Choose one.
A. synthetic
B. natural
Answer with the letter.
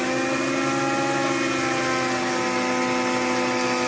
B